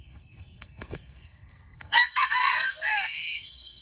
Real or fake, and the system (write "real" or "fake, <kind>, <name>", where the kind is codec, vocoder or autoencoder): fake, codec, SNAC